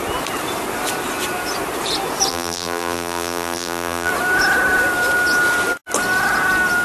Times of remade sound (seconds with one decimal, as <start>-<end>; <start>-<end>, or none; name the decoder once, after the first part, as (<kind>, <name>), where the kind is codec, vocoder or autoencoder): 2.3-4.1 (vocoder, BigVGAN v2)

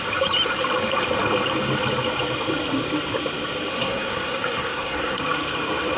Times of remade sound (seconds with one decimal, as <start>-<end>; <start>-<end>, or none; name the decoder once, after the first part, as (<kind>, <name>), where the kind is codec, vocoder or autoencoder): 3.7-5.2 (codec, SNAC)

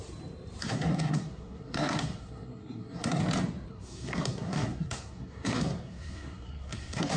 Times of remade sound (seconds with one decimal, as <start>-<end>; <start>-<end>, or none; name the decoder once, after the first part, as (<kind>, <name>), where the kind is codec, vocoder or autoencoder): 0.6-3.2 (codec, SNAC); 3.7-7.2